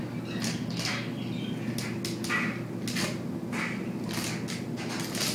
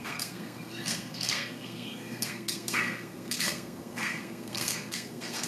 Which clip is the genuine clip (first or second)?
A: first